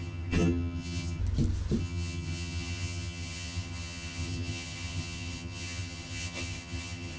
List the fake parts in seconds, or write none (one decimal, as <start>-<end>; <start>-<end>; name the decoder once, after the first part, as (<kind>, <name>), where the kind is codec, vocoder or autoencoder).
0.0-1.2 (vocoder, HiFi-GAN); 1.8-7.2